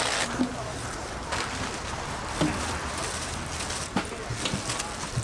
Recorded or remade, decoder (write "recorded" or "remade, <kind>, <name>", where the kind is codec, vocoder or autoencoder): recorded